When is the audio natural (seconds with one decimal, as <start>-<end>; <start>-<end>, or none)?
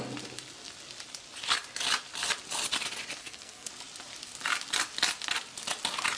0.0-3.2; 3.7-6.2